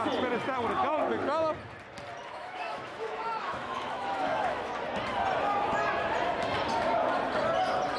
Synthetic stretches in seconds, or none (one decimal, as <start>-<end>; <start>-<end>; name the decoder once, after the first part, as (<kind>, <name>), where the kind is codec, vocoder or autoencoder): 2.2-4.7 (autoencoder, DAC-VAE)